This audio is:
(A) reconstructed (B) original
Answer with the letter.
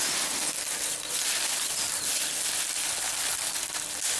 B